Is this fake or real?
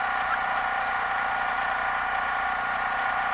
real